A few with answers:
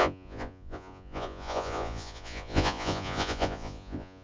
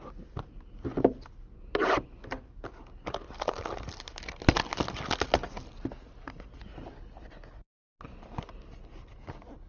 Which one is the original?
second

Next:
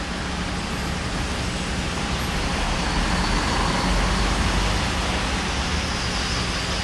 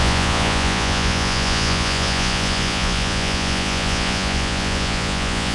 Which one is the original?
first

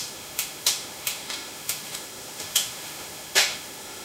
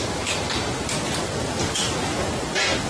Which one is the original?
second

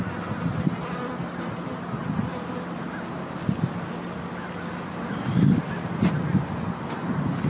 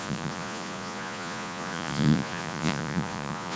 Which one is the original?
first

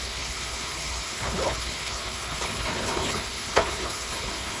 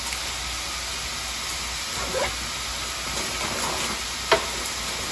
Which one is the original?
second